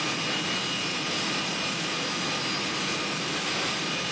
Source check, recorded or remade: recorded